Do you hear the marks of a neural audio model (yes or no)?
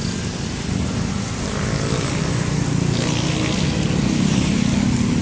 no